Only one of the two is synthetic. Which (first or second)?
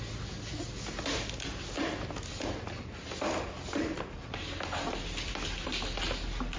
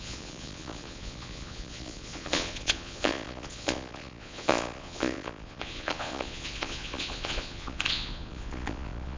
second